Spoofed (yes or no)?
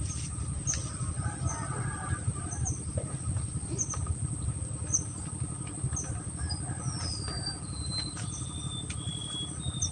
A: no